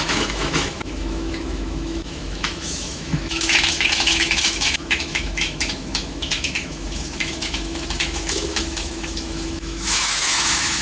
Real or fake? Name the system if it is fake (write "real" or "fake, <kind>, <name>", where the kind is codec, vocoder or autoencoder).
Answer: fake, autoencoder, DAC-VAE